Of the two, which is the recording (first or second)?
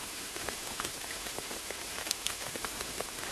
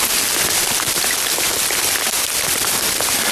second